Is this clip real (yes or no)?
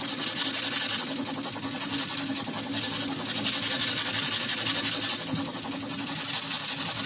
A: yes